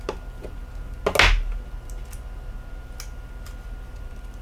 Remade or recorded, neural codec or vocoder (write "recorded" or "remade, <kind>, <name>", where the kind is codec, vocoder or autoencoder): recorded